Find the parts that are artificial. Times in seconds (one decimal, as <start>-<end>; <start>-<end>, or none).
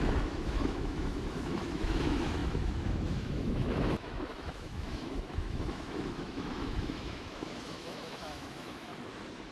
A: 0.0-8.9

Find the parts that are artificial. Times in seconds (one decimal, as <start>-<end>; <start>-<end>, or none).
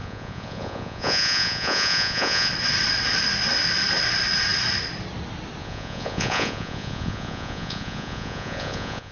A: 0.0-2.5; 5.6-9.1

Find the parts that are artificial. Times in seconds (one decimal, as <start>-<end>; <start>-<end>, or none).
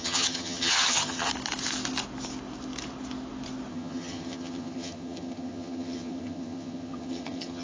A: 0.0-1.3; 3.7-7.6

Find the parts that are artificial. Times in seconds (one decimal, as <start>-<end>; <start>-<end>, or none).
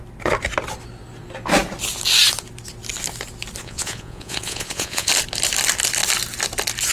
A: 3.6-5.1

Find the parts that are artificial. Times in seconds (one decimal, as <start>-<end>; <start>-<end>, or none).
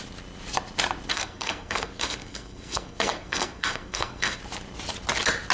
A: 1.1-4.4